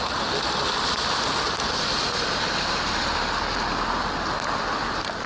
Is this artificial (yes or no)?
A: no